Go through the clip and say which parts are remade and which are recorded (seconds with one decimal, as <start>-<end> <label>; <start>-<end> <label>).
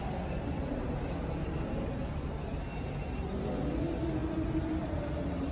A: 0.0-5.5 recorded